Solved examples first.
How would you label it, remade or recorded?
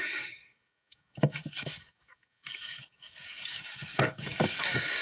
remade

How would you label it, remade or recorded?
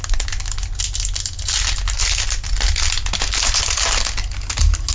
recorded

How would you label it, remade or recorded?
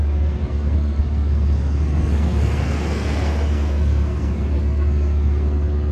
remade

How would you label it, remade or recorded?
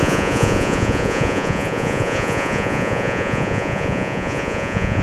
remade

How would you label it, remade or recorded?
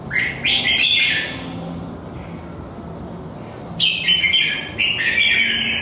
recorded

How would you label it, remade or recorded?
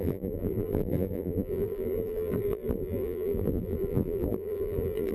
remade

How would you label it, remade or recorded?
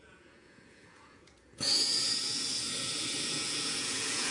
remade